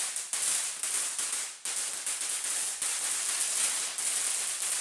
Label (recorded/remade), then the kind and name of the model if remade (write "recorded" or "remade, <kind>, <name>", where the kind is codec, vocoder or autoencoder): recorded